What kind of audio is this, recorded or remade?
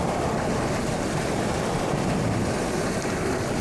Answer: recorded